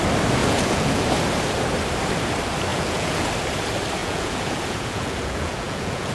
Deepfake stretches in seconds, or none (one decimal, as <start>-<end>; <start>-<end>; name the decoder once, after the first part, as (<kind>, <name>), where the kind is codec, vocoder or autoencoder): 0.4-1.0 (vocoder, Vocos); 2.7-3.3; 4.0-6.1